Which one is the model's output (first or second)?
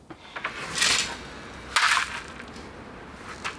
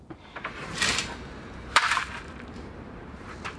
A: second